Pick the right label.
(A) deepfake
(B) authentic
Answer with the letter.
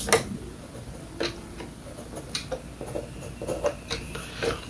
B